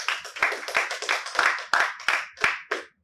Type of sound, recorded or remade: recorded